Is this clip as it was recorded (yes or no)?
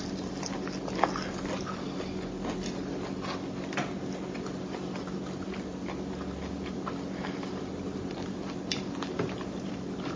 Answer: yes